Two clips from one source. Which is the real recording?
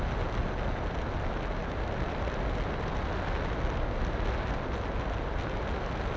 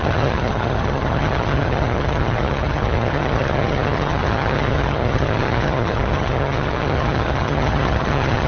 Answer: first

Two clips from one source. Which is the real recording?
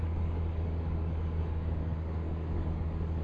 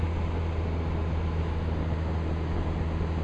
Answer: second